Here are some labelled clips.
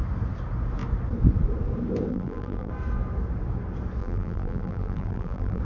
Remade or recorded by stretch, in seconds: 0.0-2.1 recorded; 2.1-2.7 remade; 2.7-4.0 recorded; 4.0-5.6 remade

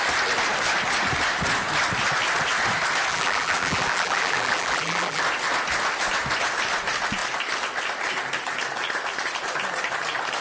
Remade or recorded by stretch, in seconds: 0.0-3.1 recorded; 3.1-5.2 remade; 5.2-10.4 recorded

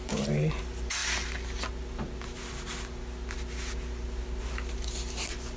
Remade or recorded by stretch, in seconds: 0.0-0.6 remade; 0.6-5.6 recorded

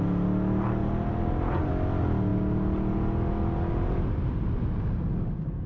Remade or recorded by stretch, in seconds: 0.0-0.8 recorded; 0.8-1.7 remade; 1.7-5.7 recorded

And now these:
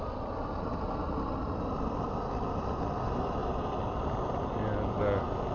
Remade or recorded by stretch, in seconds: 0.0-5.5 recorded

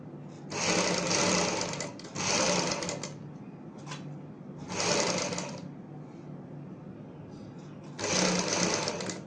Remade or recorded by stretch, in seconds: 0.0-9.3 recorded

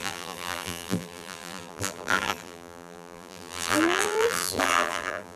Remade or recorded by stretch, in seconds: 0.0-5.4 remade